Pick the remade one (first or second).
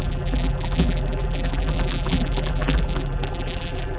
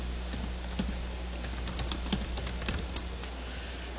first